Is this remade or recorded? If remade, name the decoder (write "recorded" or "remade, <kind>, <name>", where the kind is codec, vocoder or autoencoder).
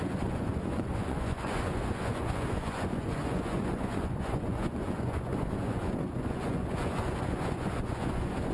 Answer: remade, vocoder, Vocos